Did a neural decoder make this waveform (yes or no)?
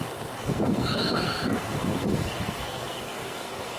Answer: yes